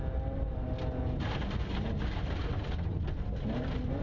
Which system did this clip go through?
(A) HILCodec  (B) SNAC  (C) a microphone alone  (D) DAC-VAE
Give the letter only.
C